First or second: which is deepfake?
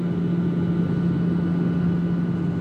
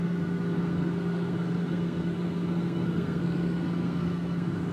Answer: second